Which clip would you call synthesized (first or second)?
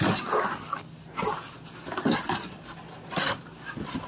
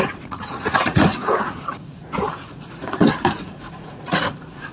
second